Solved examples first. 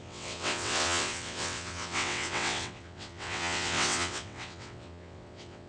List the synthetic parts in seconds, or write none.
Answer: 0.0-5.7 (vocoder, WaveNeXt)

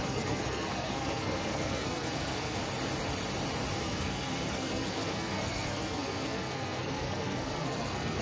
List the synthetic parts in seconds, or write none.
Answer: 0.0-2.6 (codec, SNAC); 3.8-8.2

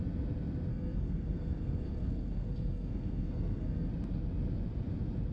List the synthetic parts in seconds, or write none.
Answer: 0.7-3.9 (codec, SNAC)

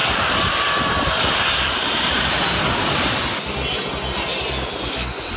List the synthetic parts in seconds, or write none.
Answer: 0.0-3.2 (vocoder, BigVGAN v2)